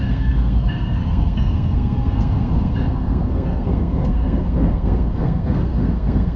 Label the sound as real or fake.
fake